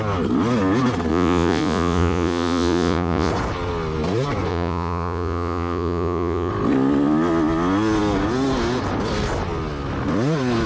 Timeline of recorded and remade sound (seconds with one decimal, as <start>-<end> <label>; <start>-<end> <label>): 0.0-1.1 recorded; 1.1-3.3 remade; 3.3-4.5 recorded; 4.5-6.5 remade; 6.5-10.7 recorded